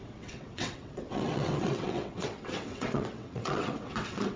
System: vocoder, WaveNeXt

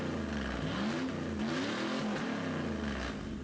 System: none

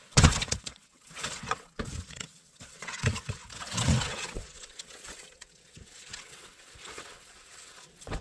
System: vocoder, WaveNeXt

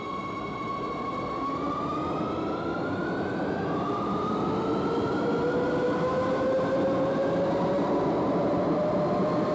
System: none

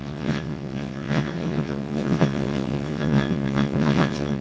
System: vocoder, WaveNeXt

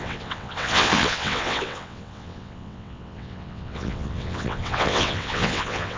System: vocoder, WaveNeXt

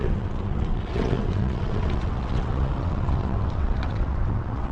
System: vocoder, WaveNeXt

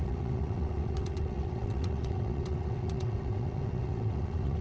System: vocoder, WaveNeXt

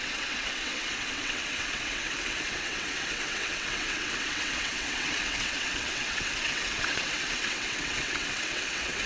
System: vocoder, WaveNeXt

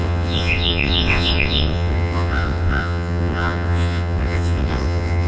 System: vocoder, WaveNeXt